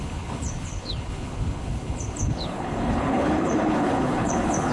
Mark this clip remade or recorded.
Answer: remade